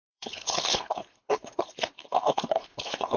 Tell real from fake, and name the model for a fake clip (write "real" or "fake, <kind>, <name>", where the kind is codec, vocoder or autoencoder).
fake, codec, HILCodec